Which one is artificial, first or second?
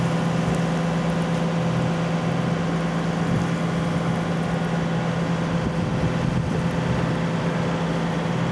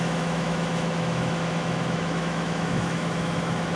second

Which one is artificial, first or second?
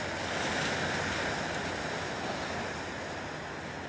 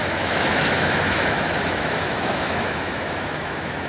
second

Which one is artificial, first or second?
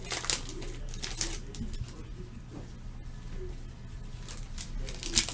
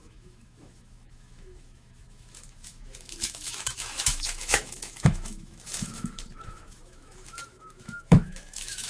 second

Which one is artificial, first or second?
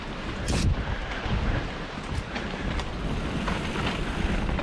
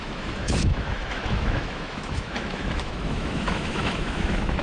second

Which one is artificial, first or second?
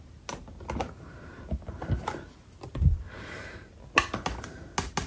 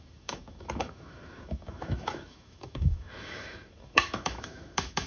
second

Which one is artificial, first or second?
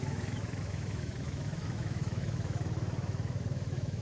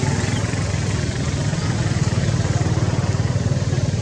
first